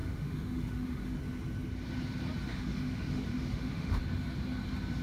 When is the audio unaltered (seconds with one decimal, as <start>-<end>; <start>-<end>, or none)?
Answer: 1.2-2.5; 4.0-5.0